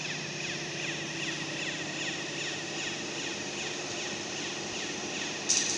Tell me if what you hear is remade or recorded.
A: recorded